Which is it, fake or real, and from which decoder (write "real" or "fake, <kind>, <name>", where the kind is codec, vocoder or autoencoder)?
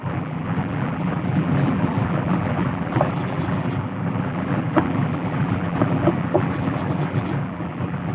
fake, vocoder, BigVGAN v2